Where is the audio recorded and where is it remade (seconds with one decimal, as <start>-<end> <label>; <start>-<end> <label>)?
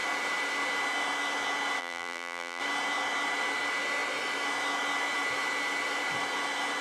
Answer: 0.0-1.8 recorded; 1.8-2.6 remade; 2.6-6.8 recorded